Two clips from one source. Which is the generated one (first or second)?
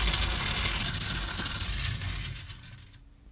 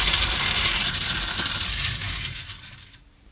second